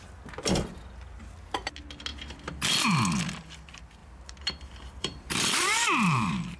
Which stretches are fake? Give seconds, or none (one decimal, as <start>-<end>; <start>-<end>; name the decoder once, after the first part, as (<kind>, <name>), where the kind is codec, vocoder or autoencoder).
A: 4.0-6.6 (vocoder, BigVGAN v2)